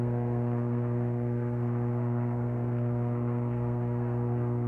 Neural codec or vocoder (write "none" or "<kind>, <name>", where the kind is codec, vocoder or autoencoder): codec, SNAC